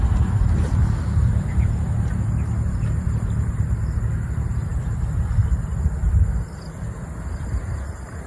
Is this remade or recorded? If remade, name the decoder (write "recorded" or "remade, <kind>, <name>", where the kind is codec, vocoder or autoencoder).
recorded